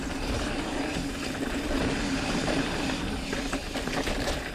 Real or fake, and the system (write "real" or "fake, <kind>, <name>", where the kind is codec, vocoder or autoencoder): real